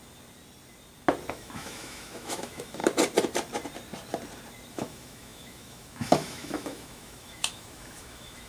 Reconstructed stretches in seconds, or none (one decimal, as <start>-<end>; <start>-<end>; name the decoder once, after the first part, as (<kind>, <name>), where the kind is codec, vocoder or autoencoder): 1.3-2.8 (autoencoder, DAC-VAE); 4.7-8.5